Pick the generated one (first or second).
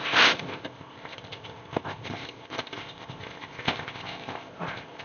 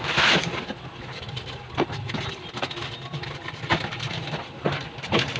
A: first